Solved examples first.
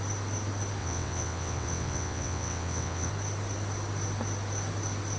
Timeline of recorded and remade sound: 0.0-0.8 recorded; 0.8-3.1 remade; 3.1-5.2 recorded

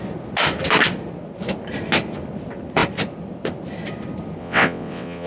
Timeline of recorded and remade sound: 0.0-4.4 recorded; 4.4-5.3 remade

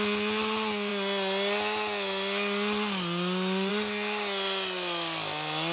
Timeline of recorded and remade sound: 0.0-5.7 recorded

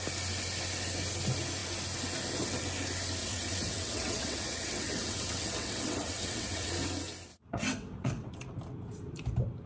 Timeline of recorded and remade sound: 0.0-3.2 recorded; 3.2-6.7 remade; 6.7-7.3 recorded; 7.3-8.3 remade; 8.3-9.7 recorded

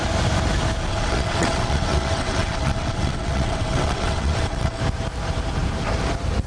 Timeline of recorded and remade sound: 0.0-0.9 recorded; 0.9-4.8 remade; 4.8-6.5 recorded

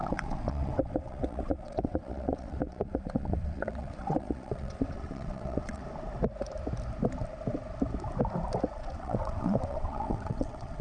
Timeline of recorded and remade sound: 0.0-5.8 remade; 5.8-8.8 recorded; 8.8-10.8 remade

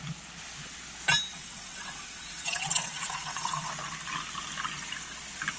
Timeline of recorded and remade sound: 0.0-1.3 recorded; 1.3-3.7 remade; 3.7-5.6 recorded